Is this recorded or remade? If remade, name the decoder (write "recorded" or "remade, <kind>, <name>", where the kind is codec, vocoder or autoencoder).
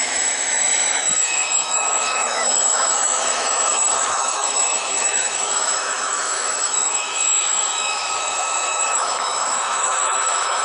remade, autoencoder, DAC-VAE